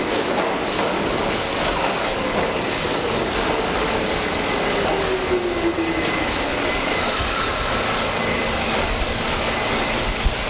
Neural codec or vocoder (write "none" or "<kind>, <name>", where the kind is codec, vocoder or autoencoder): codec, DAC